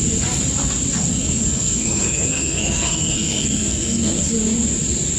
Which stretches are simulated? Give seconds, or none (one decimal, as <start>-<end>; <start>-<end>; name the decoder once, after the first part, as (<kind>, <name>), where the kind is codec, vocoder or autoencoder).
1.1-4.2 (codec, SNAC)